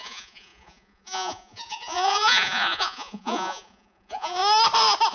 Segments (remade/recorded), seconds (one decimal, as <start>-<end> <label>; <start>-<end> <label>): 0.0-4.4 remade; 4.4-5.1 recorded